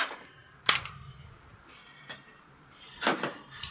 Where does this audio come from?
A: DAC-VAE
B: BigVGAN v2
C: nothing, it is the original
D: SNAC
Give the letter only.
B